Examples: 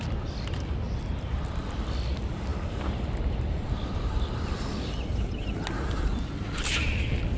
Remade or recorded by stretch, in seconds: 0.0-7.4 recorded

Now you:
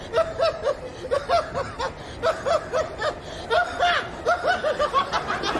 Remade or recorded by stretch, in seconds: 0.0-5.6 recorded

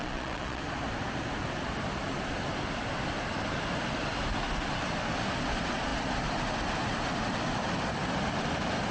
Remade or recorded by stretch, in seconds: 0.0-0.6 remade; 0.6-8.9 recorded

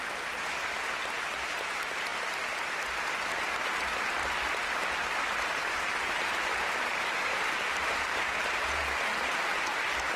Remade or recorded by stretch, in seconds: 0.0-6.9 recorded; 6.9-8.8 remade; 8.8-10.2 recorded